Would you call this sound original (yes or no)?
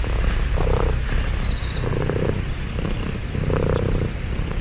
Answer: yes